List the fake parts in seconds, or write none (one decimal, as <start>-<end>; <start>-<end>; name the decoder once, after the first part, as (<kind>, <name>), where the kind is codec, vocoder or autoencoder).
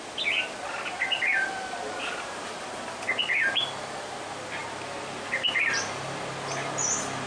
none